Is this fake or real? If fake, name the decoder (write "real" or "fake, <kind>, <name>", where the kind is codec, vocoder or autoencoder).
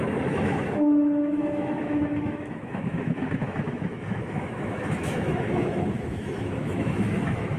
fake, autoencoder, DAC-VAE